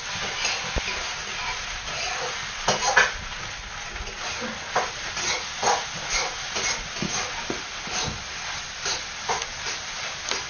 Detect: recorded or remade recorded